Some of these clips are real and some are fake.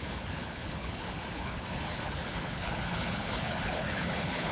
fake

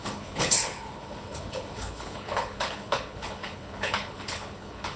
fake